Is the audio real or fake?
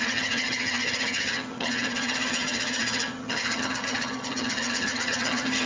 fake